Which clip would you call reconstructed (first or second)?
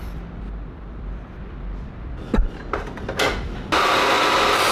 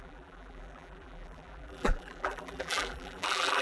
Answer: second